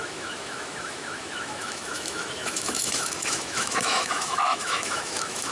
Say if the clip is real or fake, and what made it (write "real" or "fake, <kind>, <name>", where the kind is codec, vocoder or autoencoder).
fake, autoencoder, DAC-VAE